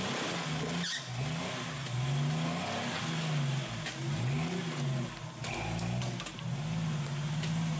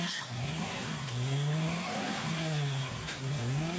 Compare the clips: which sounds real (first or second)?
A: first